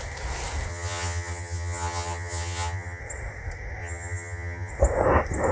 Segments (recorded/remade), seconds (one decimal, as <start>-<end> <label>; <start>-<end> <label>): 0.0-0.7 recorded; 0.7-3.0 remade; 3.0-3.8 recorded; 3.8-4.7 remade; 4.7-5.5 recorded